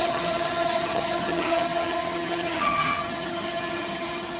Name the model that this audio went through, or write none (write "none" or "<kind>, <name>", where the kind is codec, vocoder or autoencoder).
vocoder, HiFi-GAN